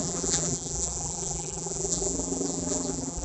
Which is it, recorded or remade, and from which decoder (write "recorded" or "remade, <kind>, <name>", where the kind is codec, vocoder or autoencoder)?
remade, vocoder, BigVGAN v2